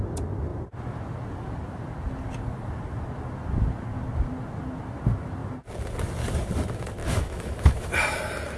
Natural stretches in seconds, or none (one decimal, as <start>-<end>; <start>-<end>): 0.0-7.0; 7.9-8.6

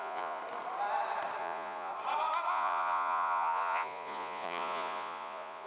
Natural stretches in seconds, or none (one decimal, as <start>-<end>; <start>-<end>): 0.4-1.4; 1.9-2.5

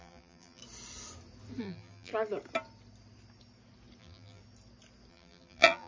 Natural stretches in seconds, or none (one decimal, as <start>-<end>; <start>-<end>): 0.6-1.6; 2.1-4.0; 4.4-5.1

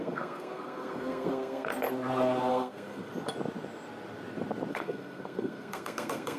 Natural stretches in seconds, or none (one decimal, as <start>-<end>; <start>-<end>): 1.7-2.5; 3.1-4.7

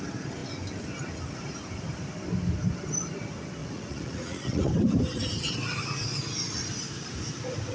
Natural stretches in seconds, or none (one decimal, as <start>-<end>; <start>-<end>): 0.0-3.6; 4.7-7.7